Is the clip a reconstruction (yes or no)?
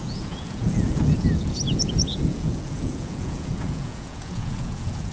yes